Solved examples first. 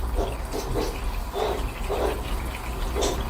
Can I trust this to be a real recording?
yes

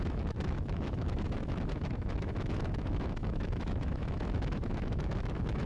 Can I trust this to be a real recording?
no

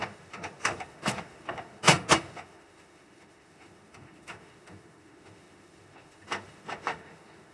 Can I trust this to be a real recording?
no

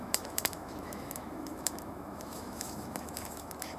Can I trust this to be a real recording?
no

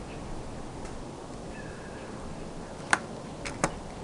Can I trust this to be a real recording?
yes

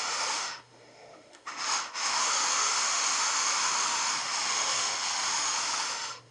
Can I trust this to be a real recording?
no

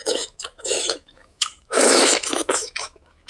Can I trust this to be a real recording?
no